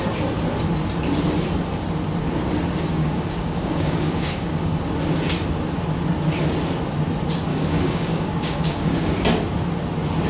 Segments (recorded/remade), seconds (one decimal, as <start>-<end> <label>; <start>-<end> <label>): 0.0-3.0 recorded; 3.0-4.8 remade; 4.8-7.5 recorded; 7.5-9.1 remade; 9.1-10.3 recorded